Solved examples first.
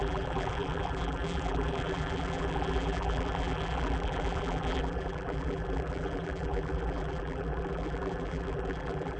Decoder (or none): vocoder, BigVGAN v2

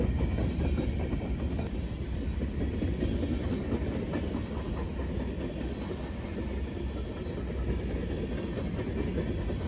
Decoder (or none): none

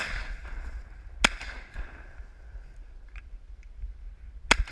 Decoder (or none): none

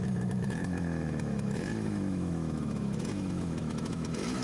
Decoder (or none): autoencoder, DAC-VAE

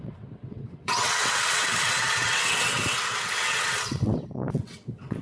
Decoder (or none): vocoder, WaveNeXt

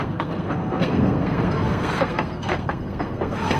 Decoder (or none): codec, SNAC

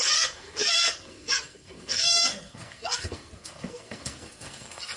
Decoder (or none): codec, SNAC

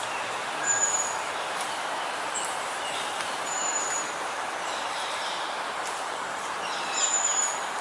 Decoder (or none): vocoder, BigVGAN v2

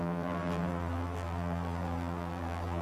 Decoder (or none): vocoder, BigVGAN v2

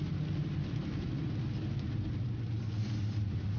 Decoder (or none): none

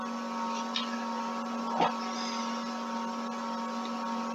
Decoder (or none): none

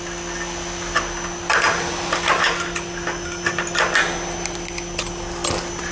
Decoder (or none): none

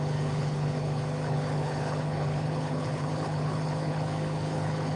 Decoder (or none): codec, HILCodec